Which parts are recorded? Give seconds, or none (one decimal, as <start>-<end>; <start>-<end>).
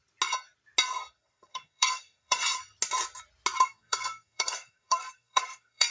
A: 0.0-1.1; 2.6-3.6